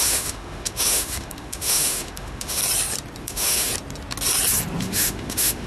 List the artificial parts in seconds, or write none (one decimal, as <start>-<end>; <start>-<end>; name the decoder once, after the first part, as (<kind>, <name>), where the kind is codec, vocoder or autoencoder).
0.0-2.6 (autoencoder, DAC-VAE); 3.2-3.7; 4.8-5.7